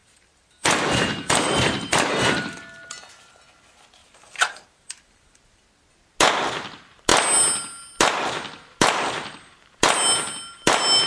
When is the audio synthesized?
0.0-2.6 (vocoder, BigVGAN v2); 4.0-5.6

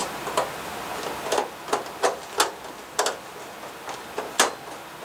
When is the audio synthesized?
none

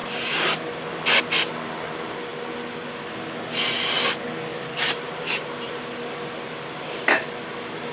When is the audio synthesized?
4.5-5.8 (vocoder, BigVGAN v2)

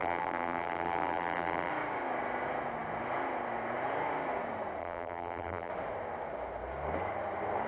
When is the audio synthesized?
0.0-1.7 (vocoder, BigVGAN v2); 4.8-5.7